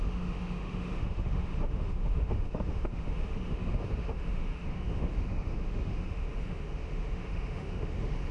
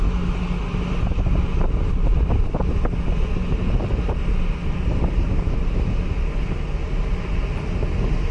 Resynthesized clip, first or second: first